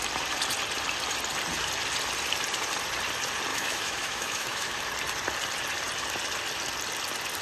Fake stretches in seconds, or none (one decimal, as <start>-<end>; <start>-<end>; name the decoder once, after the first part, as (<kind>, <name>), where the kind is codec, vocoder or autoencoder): 3.5-4.8 (autoencoder, DAC-VAE)